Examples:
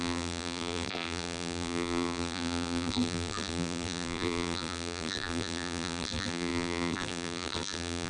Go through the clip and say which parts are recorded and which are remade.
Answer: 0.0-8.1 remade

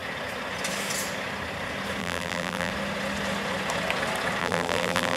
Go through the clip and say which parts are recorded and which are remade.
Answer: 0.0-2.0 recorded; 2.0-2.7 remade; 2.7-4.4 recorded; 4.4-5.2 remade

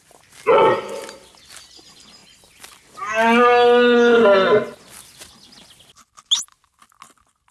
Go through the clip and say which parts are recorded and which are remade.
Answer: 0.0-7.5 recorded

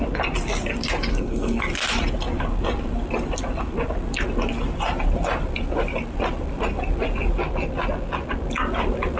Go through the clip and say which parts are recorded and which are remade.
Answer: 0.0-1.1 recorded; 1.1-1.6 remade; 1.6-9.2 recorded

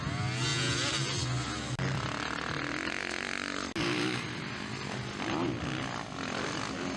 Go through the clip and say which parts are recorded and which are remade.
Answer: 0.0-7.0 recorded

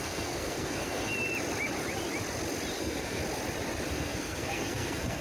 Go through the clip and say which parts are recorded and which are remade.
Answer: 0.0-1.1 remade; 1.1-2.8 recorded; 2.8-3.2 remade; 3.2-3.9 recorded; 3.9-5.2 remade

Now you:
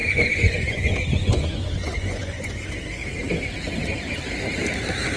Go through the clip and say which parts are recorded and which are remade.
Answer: 0.0-2.6 remade; 2.6-5.2 recorded

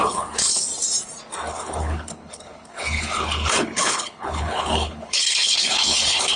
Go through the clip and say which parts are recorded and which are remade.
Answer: 0.0-0.7 remade; 0.7-1.5 recorded; 1.5-6.4 remade